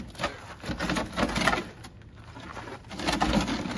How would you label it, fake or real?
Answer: real